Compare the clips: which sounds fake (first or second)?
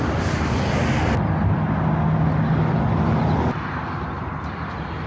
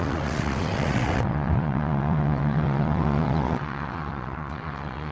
second